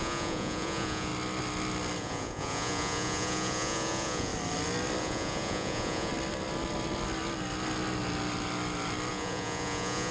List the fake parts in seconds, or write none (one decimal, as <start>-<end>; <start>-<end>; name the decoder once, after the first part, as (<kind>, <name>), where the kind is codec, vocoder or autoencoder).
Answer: 0.0-1.1 (vocoder, Vocos); 2.0-4.3; 5.0-6.1; 9.1-10.1